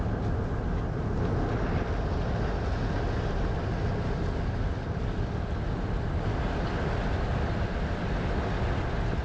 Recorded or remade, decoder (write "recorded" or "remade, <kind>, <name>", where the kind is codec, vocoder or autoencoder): recorded